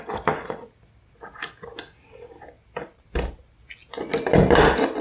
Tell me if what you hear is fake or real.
real